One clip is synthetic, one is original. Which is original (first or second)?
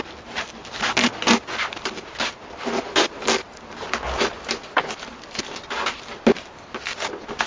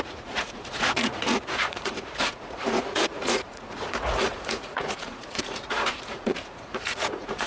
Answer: first